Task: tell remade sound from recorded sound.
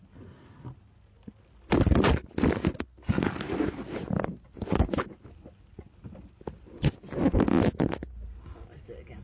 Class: recorded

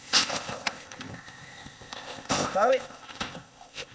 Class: remade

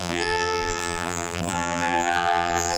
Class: remade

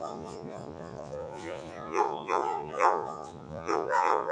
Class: remade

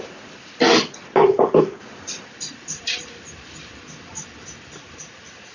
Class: recorded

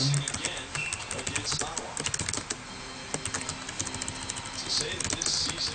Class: recorded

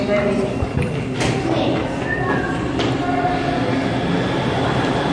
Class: recorded